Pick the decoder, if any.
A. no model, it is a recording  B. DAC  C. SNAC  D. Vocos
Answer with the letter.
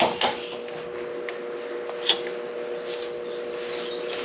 A